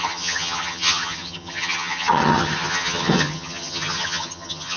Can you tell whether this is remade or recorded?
remade